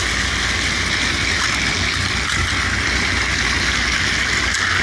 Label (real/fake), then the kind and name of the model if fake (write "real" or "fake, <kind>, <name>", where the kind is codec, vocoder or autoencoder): real